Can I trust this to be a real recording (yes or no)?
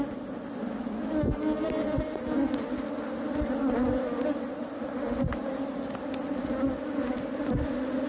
yes